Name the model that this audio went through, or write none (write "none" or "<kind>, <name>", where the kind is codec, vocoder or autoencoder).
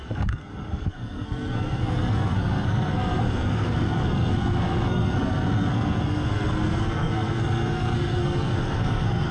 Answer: codec, SNAC